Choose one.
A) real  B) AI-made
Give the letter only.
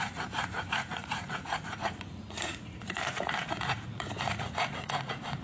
B